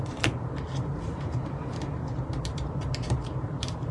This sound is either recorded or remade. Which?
remade